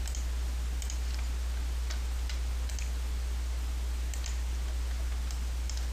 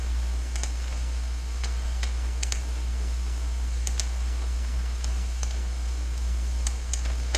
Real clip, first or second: first